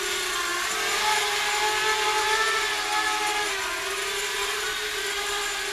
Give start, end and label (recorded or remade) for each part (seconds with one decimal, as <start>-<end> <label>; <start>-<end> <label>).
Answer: 0.0-5.7 recorded